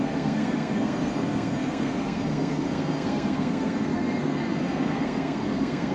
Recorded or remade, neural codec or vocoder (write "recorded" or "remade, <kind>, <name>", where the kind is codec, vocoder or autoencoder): remade, codec, SNAC